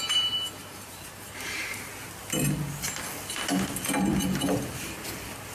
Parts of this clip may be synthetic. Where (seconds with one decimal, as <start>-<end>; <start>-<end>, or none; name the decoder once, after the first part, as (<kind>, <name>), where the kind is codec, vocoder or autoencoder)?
0.6-1.9 (vocoder, BigVGAN v2)